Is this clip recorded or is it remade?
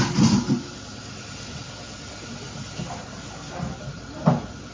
recorded